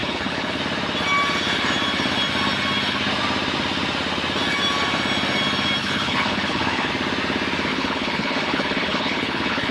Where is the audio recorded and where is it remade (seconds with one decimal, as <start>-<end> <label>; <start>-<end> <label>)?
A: 0.0-0.6 remade; 0.6-5.8 recorded; 5.8-6.9 remade; 6.9-7.7 recorded; 7.7-9.7 remade